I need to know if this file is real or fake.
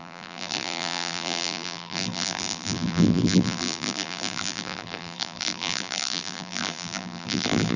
fake